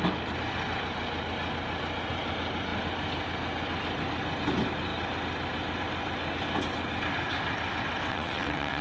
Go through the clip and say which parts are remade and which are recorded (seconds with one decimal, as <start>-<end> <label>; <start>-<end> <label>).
0.0-8.1 recorded; 8.1-8.8 remade